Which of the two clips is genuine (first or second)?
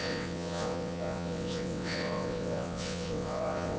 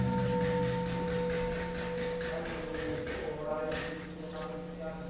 second